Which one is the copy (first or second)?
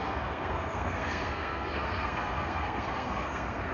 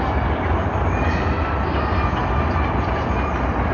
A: first